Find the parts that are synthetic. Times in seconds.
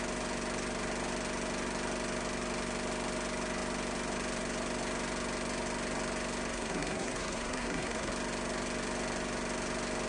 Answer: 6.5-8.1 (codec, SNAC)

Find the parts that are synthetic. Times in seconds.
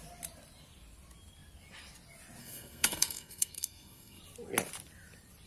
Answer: 2.4-4.2 (codec, SNAC)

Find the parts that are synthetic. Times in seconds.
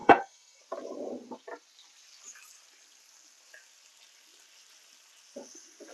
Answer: 0.0-0.6 (codec, SNAC)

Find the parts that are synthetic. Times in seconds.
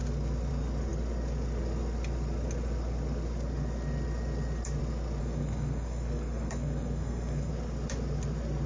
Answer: 5.2-7.5 (codec, SNAC)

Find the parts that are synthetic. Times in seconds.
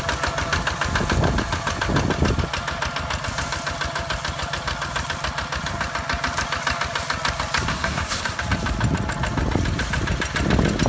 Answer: 7.7-8.4 (codec, SNAC)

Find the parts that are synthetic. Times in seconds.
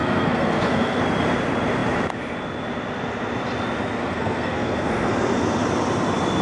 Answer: 0.0-1.0 (codec, SNAC); 4.0-5.1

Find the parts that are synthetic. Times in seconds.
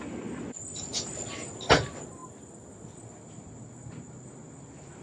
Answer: none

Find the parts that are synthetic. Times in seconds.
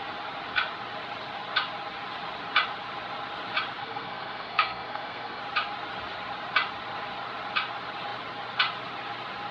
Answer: 3.8-5.4 (codec, SNAC)